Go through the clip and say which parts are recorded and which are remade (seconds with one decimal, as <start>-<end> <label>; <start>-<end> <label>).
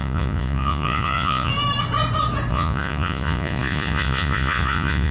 0.0-1.5 remade; 1.5-2.5 recorded; 2.5-5.1 remade